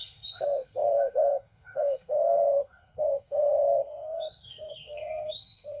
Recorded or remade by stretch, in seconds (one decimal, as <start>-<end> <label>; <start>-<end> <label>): 0.0-5.8 remade